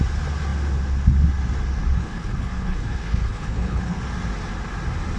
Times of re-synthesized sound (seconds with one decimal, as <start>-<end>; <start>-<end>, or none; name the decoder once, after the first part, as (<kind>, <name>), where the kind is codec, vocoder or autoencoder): 2.0-4.0 (codec, HILCodec)